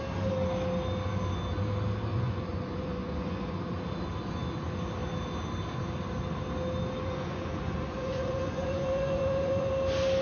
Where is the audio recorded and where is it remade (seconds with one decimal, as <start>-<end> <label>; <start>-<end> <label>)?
0.0-2.1 recorded; 2.1-3.6 remade; 3.6-7.0 recorded; 7.0-9.7 remade; 9.7-10.2 recorded